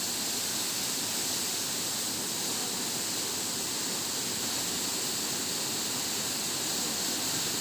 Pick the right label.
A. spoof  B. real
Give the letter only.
B